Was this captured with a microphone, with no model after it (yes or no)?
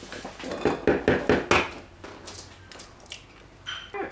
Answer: yes